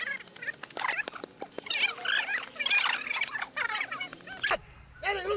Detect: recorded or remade recorded